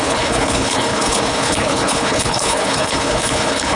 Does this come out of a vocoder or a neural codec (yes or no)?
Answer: yes